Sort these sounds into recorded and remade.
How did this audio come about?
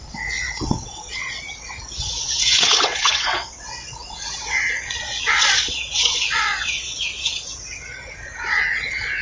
remade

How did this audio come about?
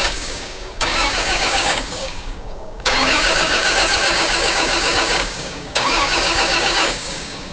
remade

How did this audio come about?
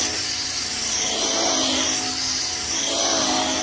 recorded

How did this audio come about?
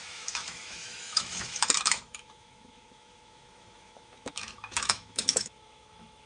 remade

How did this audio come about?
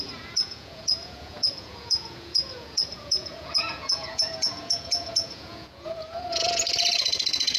remade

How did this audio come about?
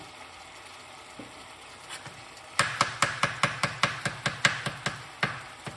recorded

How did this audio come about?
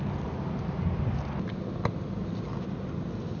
recorded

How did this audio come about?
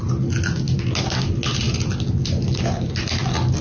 recorded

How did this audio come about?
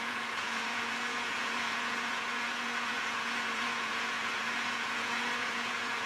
remade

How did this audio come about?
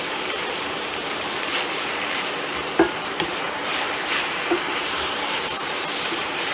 remade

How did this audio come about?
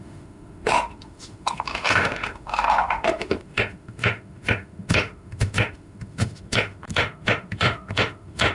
remade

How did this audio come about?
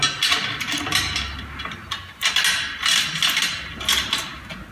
recorded